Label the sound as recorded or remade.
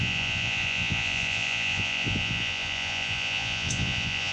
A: remade